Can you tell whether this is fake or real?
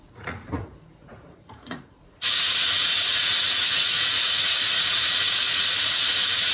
fake